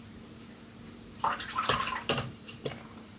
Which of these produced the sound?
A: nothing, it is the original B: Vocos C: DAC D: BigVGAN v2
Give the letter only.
D